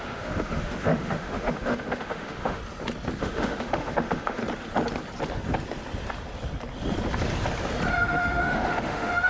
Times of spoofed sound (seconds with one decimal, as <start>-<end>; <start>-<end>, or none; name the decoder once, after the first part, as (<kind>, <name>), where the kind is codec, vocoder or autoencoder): 0.0-2.6 (autoencoder, DAC-VAE); 3.2-4.4; 7.9-9.3